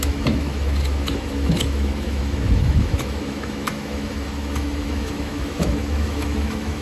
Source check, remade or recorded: remade